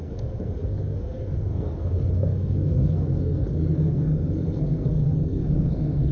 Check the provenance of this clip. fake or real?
fake